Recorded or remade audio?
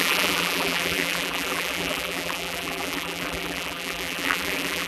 remade